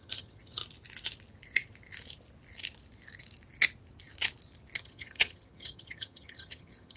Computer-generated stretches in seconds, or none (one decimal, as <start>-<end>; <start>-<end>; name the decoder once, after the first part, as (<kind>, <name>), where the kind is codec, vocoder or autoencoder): 0.0-0.6 (vocoder, HiFi-GAN); 4.8-7.0

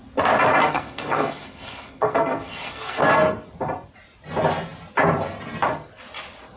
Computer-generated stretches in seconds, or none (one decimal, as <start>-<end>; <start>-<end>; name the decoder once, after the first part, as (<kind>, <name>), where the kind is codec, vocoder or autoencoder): 0.6-3.0 (codec, SNAC)

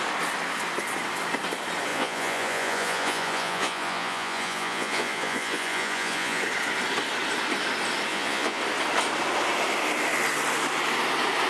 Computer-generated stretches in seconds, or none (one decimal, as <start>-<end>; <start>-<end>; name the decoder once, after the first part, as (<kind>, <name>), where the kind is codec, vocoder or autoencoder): 1.9-6.4 (vocoder, Vocos); 8.1-8.6

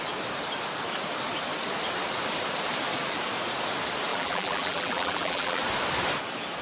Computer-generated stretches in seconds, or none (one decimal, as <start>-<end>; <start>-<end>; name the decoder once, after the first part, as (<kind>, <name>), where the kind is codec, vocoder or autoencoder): 4.1-5.6 (vocoder, BigVGAN v2)